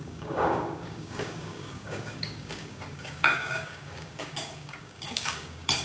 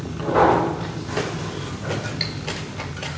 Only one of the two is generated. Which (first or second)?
first